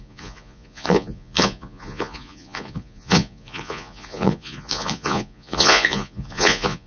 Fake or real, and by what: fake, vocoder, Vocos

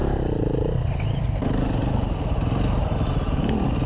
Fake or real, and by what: real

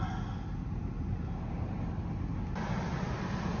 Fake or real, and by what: real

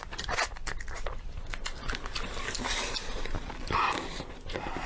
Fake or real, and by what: real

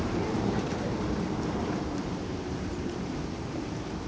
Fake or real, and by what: fake, vocoder, BigVGAN v2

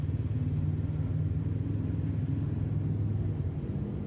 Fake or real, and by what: real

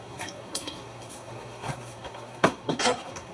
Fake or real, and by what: fake, codec, SNAC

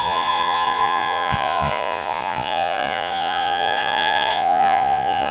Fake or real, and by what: fake, vocoder, Vocos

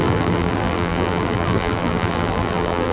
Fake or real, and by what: fake, vocoder, BigVGAN v2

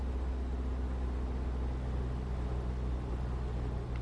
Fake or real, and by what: real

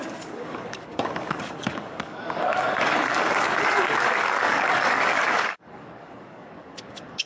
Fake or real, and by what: fake, codec, DAC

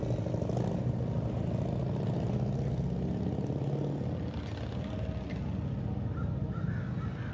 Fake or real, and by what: real